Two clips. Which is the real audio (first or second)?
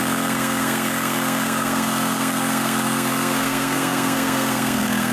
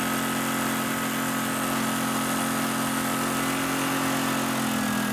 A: second